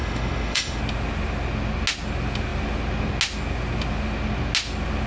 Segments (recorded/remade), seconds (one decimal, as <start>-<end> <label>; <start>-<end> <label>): 0.0-0.8 remade; 0.8-5.1 recorded